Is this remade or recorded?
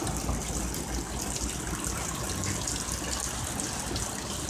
recorded